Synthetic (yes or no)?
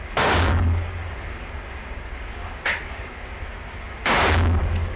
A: yes